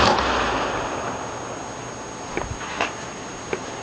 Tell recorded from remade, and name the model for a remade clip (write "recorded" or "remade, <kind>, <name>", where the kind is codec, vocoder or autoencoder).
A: recorded